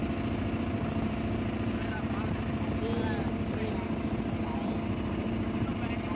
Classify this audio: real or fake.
real